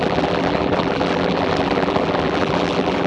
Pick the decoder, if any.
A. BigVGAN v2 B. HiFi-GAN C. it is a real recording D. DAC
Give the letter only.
A